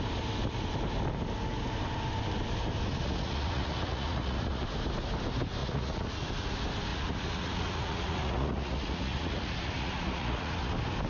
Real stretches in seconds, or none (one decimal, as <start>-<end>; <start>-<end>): 0.0-2.9; 4.6-5.6; 6.1-6.9; 10.7-11.1